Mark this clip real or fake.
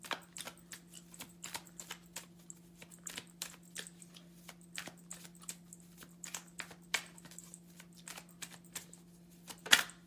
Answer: real